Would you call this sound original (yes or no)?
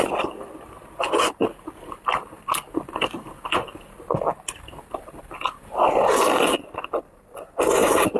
yes